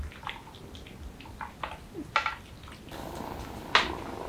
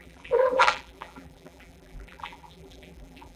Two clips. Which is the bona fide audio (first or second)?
first